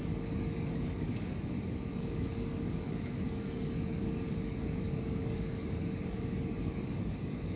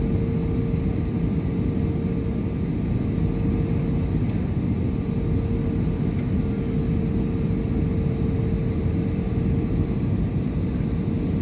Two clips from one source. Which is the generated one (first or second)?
first